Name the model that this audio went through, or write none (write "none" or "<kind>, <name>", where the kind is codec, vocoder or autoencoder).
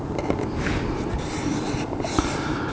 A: none